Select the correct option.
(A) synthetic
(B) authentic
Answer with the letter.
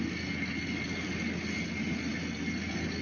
B